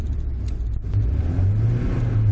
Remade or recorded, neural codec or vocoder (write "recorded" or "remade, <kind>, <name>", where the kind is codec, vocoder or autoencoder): recorded